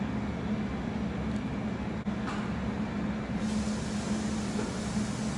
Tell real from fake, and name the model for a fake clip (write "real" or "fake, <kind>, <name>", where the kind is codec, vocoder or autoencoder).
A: real